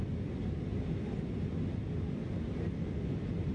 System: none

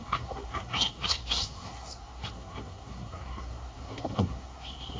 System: codec, SNAC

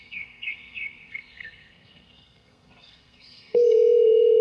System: codec, SNAC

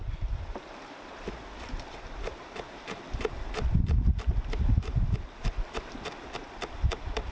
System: none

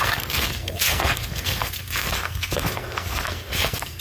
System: codec, SNAC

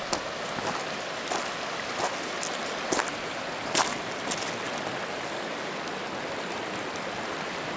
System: none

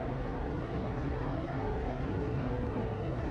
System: codec, SNAC